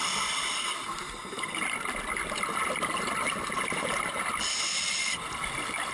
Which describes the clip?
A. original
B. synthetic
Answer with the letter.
A